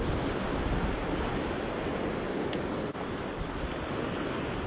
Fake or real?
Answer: real